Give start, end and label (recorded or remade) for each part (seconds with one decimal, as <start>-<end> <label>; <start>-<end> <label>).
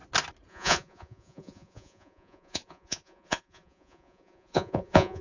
0.0-0.5 recorded; 0.5-5.2 remade